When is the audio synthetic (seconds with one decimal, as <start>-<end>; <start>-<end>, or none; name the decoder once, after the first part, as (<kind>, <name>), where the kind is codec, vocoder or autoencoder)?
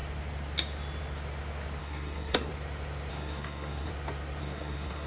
1.8-2.5 (codec, SNAC); 3.1-3.9; 4.4-5.1